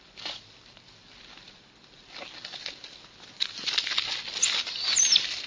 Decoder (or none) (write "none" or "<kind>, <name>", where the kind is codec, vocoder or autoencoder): none